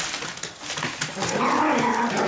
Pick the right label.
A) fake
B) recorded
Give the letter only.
B